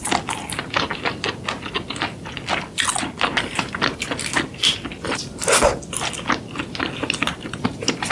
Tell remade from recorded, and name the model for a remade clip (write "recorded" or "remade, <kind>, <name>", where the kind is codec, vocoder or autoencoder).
recorded